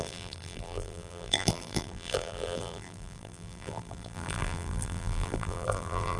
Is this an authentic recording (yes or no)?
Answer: no